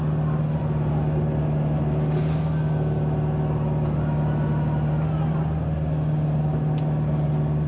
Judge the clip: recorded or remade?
recorded